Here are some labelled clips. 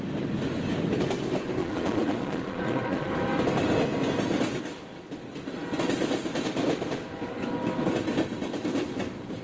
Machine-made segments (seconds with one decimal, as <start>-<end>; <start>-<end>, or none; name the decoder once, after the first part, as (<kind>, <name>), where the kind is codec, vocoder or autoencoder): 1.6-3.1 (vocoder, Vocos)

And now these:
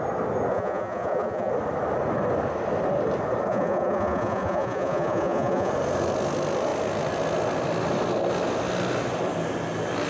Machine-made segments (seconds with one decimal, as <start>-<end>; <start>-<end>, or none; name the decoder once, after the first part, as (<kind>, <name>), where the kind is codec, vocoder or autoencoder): 0.5-1.5 (vocoder, Vocos); 3.5-5.7

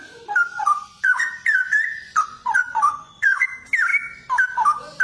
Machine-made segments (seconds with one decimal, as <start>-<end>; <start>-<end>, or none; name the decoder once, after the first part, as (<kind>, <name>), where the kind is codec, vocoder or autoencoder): 0.5-3.5 (vocoder, Vocos)

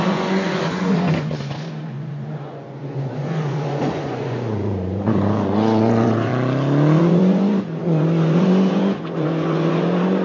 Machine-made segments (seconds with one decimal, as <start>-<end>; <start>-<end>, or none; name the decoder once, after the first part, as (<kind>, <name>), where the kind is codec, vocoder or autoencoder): 0.0-6.3 (vocoder, Vocos); 7.0-10.2